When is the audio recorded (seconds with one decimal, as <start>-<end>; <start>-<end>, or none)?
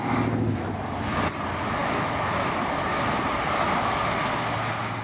0.0-1.8; 2.4-5.0